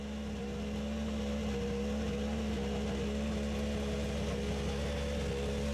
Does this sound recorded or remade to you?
recorded